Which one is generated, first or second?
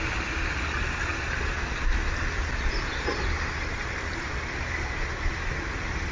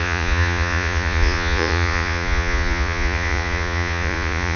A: second